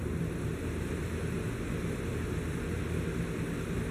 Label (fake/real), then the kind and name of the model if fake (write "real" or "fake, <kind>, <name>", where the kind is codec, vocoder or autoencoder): fake, vocoder, BigVGAN v2